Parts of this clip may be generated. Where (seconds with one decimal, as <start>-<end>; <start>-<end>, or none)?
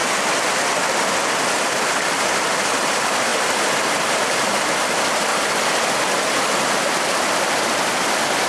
2.4-3.3; 4.0-5.3; 6.4-8.5